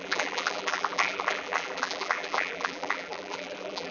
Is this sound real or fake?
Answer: fake